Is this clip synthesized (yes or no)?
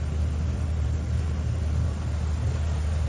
no